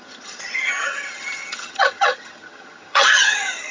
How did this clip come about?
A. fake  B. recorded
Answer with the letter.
A